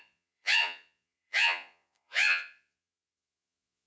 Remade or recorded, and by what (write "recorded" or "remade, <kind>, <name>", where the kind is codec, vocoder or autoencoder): remade, vocoder, Vocos